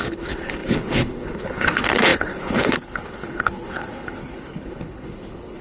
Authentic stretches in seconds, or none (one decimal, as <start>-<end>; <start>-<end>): none